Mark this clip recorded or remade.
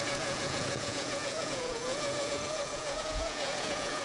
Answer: remade